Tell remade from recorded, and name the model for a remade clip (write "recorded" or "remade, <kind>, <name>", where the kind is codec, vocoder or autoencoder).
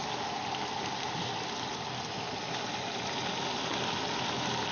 recorded